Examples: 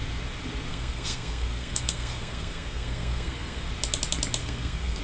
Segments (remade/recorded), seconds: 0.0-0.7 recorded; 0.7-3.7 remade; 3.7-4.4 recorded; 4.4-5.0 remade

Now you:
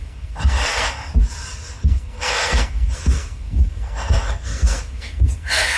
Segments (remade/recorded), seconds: 0.0-1.1 remade; 1.1-1.7 recorded; 1.7-5.8 remade

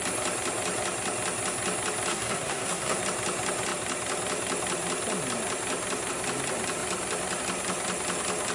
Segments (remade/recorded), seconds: 0.0-2.1 recorded; 2.1-3.0 remade; 3.0-8.5 recorded

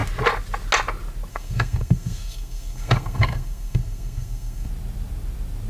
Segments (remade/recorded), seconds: 0.0-1.3 recorded; 1.3-4.7 remade; 4.7-5.7 recorded

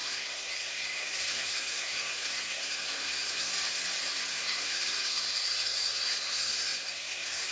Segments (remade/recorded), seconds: 0.0-3.5 remade; 3.5-4.3 recorded; 4.3-7.5 remade

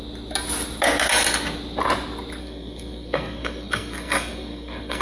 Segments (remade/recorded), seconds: 0.0-2.4 recorded; 2.4-5.0 remade

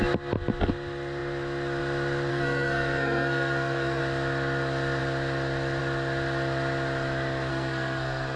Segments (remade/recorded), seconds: 0.0-2.3 recorded; 2.3-4.0 remade; 4.0-7.5 recorded; 7.5-8.4 remade